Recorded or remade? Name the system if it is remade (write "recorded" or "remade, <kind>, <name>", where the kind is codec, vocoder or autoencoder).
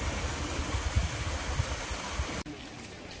recorded